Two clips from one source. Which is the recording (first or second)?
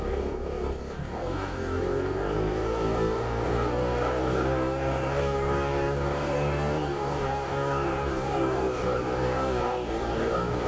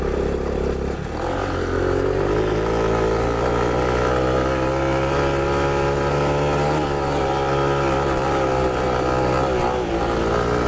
second